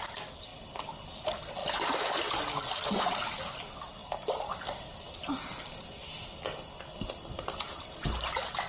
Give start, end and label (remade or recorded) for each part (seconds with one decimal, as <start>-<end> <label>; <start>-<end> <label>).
0.0-8.7 recorded